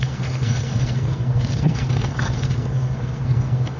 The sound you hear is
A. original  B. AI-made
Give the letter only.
B